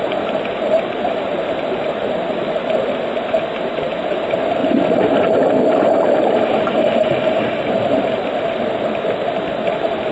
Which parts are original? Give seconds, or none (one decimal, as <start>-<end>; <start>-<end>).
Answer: 0.0-10.1